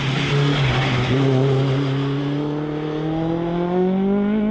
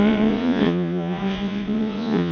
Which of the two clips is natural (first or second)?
first